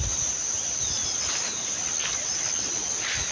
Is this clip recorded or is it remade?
recorded